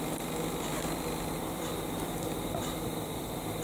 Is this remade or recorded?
remade